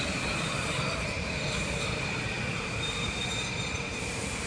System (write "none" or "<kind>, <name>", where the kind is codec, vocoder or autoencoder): vocoder, BigVGAN v2